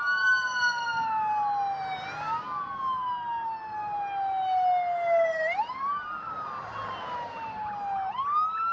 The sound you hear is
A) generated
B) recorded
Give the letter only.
B